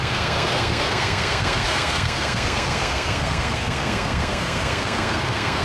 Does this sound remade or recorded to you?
remade